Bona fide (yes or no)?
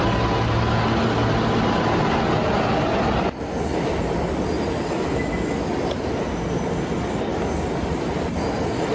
yes